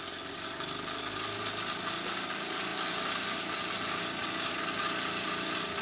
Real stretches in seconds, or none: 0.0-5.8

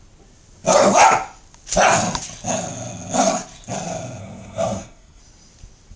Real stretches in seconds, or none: 0.0-4.2; 5.2-6.0

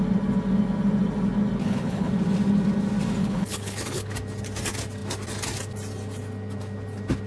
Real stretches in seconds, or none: 0.0-1.6; 2.1-3.2; 4.1-7.3